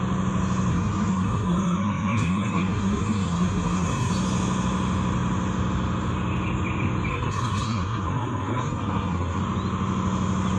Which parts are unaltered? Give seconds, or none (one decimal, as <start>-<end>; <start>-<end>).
0.0-0.7; 4.1-7.1; 9.4-10.6